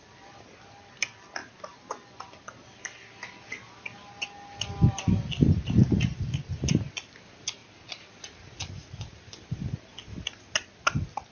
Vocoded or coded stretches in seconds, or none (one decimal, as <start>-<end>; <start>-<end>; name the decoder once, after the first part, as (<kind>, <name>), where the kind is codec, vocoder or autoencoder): none